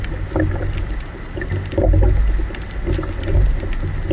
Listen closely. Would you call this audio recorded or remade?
recorded